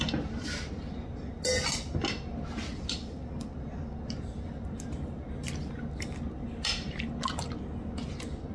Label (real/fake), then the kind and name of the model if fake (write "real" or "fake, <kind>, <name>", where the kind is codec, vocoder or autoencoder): real